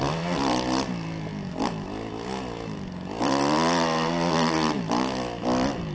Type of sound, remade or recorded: recorded